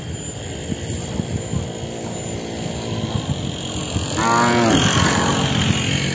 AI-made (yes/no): no